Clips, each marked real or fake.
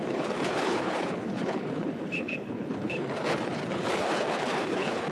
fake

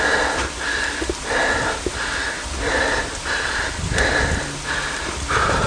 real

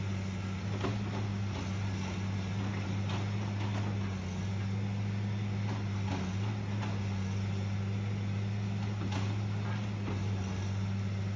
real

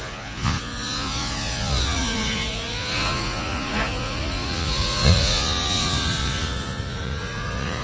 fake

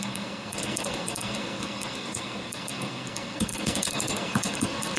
fake